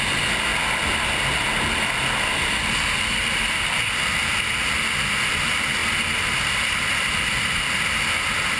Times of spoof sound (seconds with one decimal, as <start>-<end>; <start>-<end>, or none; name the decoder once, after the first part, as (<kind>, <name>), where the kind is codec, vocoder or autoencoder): none